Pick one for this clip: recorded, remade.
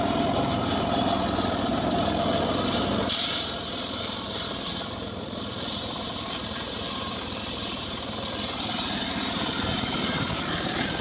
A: remade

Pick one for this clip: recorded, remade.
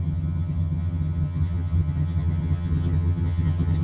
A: remade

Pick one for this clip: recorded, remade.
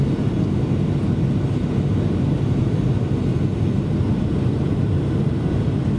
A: recorded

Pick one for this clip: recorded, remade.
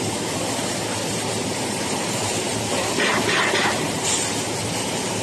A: recorded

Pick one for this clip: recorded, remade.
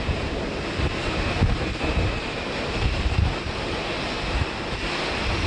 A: remade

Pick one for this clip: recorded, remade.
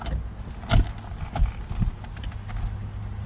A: recorded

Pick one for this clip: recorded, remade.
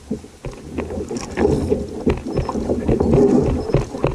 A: recorded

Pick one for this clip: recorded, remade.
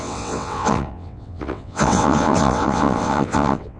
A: remade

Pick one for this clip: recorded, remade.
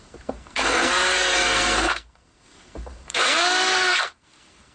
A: remade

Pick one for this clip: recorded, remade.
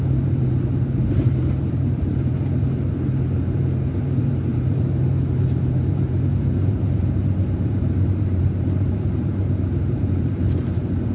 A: remade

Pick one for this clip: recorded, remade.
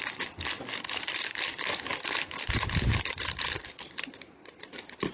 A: recorded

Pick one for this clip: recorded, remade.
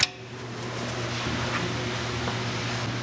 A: recorded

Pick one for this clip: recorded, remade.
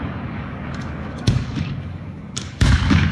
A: remade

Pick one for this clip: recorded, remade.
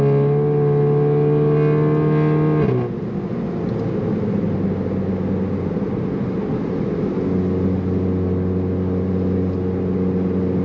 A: recorded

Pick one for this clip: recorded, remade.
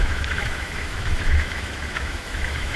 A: remade